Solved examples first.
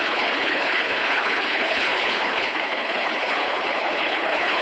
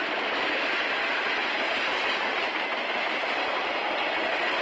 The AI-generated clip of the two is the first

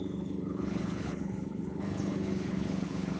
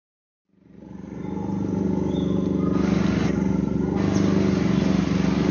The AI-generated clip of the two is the first